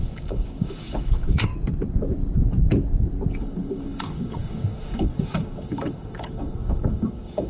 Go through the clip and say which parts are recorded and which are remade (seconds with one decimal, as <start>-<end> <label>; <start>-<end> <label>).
0.0-1.5 remade; 1.5-3.3 recorded; 3.3-7.5 remade